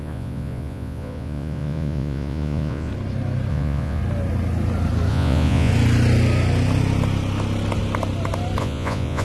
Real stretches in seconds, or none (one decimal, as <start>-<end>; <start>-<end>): 2.9-3.5; 4.0-5.1; 5.7-8.6